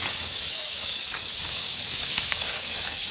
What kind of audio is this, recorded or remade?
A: remade